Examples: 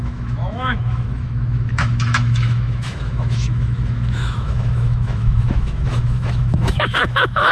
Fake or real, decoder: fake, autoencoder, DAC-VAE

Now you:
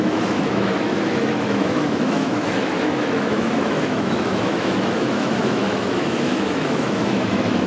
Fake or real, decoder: fake, autoencoder, DAC-VAE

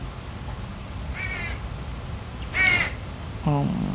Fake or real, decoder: real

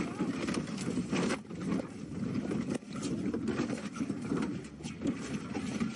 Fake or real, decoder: real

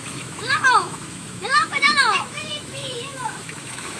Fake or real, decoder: fake, autoencoder, DAC-VAE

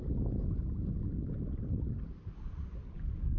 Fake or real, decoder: real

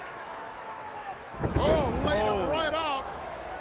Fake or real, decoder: fake, autoencoder, DAC-VAE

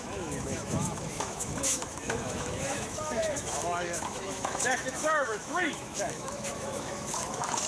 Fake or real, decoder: fake, autoencoder, DAC-VAE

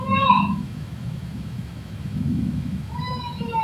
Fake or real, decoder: fake, autoencoder, DAC-VAE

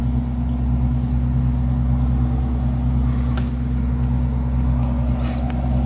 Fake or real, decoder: real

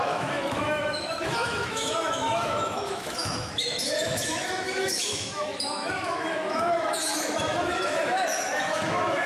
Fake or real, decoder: fake, autoencoder, DAC-VAE